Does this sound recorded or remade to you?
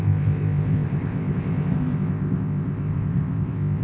remade